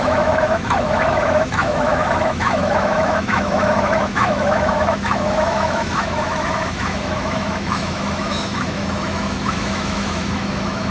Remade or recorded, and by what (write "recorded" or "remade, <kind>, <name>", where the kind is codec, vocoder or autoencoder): remade, autoencoder, DAC-VAE